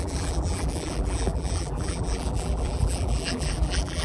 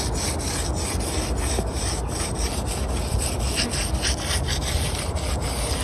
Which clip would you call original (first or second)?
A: second